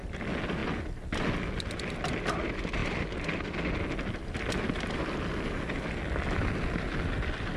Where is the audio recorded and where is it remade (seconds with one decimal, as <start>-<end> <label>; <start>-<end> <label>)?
0.0-7.6 recorded